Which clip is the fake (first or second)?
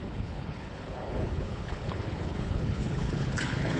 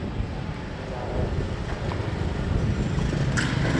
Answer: first